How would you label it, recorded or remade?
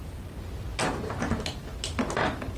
recorded